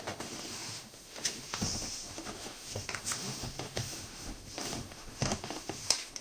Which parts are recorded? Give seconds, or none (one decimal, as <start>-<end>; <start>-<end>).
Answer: none